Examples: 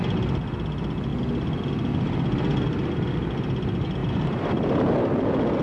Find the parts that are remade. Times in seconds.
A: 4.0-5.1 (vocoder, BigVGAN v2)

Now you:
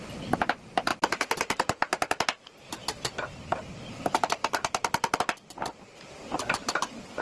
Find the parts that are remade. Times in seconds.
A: none

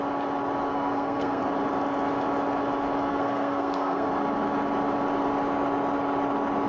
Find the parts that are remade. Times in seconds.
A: 0.7-1.4 (codec, SNAC); 3.1-4.1

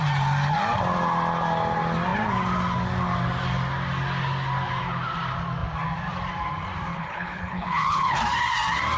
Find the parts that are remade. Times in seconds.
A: 6.9-8.2 (codec, HILCodec)